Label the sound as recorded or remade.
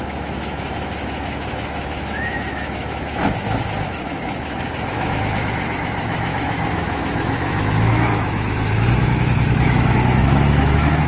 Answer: remade